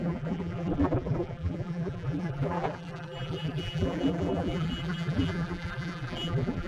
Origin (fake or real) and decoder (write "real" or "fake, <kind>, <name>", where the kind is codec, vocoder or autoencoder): fake, vocoder, BigVGAN v2